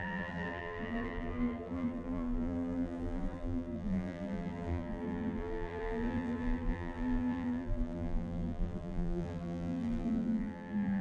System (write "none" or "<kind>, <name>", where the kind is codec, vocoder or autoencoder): vocoder, BigVGAN v2